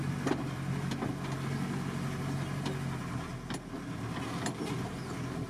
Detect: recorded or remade recorded